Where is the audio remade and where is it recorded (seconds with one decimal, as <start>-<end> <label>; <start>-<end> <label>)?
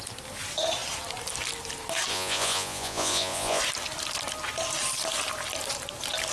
0.0-2.1 recorded; 2.1-3.6 remade; 3.6-6.3 recorded